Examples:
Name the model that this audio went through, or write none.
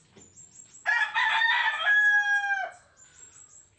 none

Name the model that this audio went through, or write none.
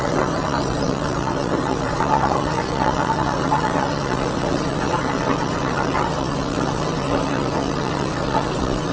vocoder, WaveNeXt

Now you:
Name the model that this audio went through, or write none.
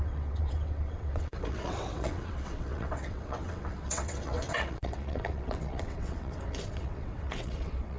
vocoder, WaveNeXt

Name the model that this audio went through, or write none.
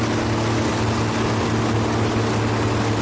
none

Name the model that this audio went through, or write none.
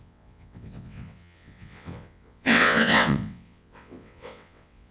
vocoder, WaveNeXt